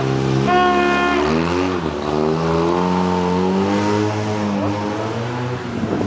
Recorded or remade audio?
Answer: recorded